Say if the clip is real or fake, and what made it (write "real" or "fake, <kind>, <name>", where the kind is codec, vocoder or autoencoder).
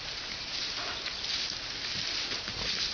real